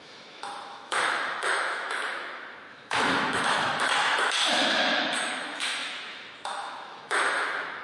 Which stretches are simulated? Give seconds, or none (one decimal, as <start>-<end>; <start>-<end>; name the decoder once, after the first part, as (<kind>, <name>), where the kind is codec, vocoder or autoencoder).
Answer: 0.0-7.8 (autoencoder, DAC-VAE)